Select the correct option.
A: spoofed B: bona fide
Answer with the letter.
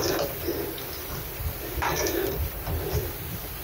A